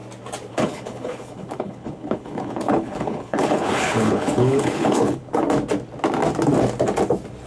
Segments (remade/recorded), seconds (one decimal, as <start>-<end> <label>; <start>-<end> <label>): 0.0-0.5 recorded; 0.5-5.4 remade; 5.4-7.5 recorded